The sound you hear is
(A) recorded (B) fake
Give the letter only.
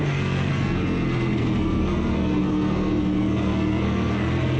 B